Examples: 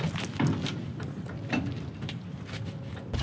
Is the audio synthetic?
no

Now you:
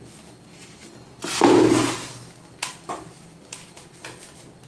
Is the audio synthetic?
no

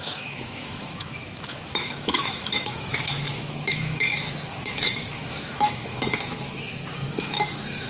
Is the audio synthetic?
yes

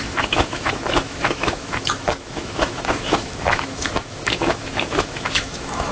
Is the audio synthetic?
yes